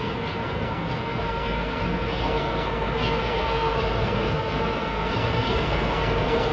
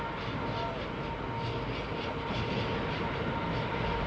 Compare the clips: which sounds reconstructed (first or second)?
first